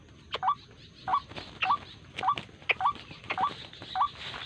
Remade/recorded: recorded